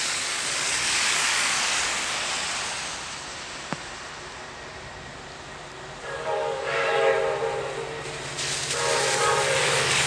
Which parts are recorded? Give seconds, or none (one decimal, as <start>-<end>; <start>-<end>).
1.9-6.0; 7.1-9.0